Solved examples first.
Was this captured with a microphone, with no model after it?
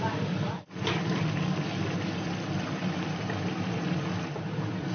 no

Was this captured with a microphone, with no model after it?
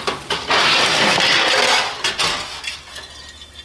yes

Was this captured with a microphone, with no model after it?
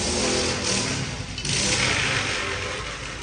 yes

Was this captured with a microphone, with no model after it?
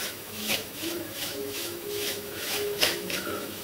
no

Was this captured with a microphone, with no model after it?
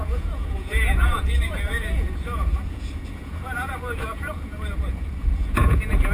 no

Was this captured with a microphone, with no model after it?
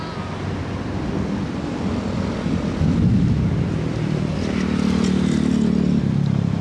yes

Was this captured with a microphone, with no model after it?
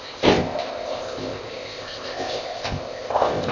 no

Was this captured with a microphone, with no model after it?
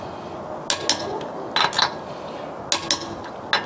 yes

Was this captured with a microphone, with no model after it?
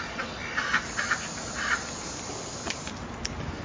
yes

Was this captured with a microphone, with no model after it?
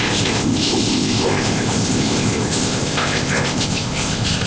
no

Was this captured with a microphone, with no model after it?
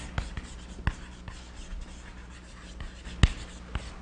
yes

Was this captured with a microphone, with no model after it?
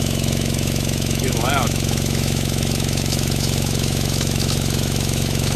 no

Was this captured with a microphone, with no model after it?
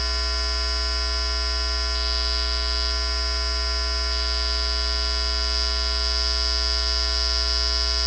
yes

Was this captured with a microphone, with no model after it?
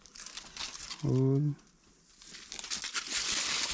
yes